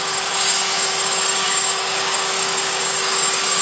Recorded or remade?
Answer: remade